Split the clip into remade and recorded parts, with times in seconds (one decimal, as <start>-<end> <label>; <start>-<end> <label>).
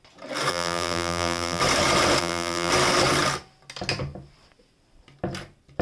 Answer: 0.0-0.5 recorded; 0.5-1.6 remade; 1.6-2.2 recorded; 2.2-2.7 remade; 2.7-5.8 recorded